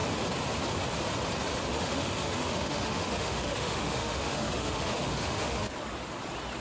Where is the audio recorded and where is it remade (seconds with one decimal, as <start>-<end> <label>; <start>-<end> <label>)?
0.0-1.7 recorded; 1.7-5.7 remade; 5.7-6.6 recorded